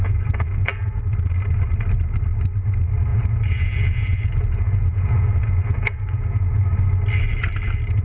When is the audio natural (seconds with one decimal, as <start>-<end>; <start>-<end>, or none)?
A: 1.0-3.1; 6.6-8.0